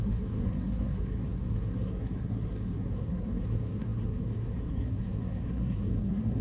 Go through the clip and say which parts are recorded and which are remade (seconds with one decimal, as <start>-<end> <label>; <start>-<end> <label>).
0.0-6.4 remade